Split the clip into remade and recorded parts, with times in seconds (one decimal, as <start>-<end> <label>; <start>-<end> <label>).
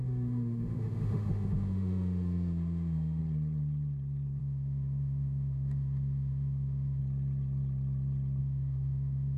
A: 0.0-3.2 remade; 3.2-4.4 recorded; 4.4-7.0 remade; 7.0-8.4 recorded; 8.4-9.4 remade